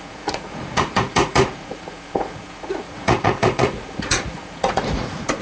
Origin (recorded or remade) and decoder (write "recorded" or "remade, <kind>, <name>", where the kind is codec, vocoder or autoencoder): remade, vocoder, Vocos